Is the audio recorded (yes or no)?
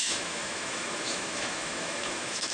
no